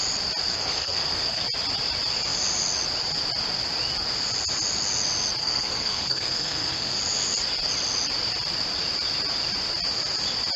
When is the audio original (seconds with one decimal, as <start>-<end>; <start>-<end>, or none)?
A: 0.0-0.5; 1.4-5.4; 7.0-10.6

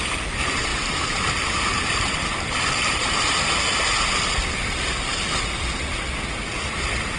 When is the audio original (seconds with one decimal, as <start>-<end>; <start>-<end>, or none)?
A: 0.0-0.7; 3.6-7.2

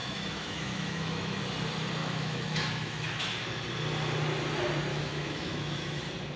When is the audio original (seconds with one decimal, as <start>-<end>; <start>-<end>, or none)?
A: 1.4-2.0; 3.6-4.9; 6.0-6.4